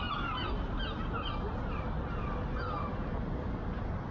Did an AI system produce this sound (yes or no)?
no